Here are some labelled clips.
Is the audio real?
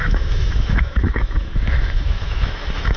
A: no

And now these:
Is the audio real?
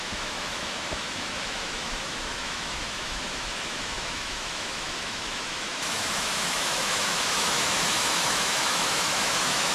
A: no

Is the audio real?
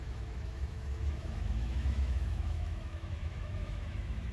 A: no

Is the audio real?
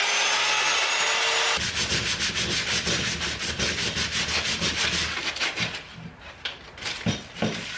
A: yes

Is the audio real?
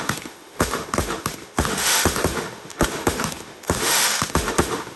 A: no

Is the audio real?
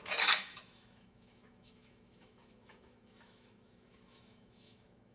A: no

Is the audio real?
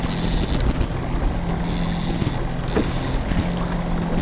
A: yes